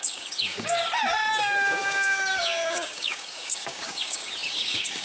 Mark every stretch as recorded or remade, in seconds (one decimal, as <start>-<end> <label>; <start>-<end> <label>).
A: 0.0-0.8 remade; 0.8-1.3 recorded; 1.3-5.0 remade